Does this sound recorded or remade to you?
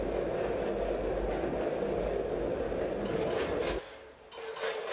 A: recorded